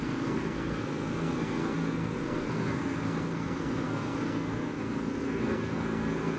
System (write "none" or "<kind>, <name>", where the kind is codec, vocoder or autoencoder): codec, SNAC